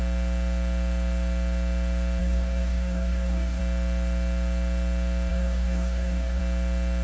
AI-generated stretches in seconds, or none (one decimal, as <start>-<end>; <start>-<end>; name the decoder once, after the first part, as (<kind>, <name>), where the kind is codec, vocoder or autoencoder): 2.2-3.6 (codec, DAC); 5.3-6.4